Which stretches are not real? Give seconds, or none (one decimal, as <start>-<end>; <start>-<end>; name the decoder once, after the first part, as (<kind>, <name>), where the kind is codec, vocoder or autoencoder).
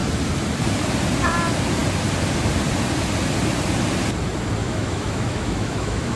4.6-6.2 (autoencoder, DAC-VAE)